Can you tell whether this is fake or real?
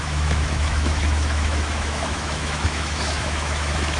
fake